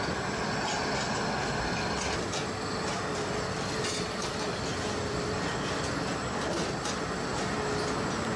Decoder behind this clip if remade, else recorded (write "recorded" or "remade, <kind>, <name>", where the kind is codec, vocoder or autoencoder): recorded